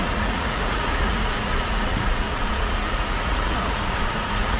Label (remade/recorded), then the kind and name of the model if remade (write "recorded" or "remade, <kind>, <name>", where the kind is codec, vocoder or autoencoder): remade, vocoder, Vocos